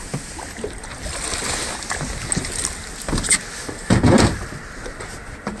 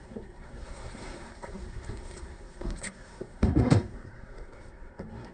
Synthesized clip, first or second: second